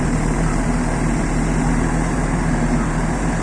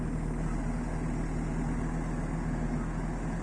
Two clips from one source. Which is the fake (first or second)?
first